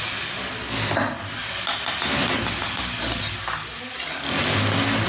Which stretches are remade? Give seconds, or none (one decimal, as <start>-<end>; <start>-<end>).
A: none